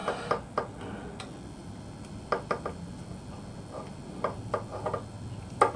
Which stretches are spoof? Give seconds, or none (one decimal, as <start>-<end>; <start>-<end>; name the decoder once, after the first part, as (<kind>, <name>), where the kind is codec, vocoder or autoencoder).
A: none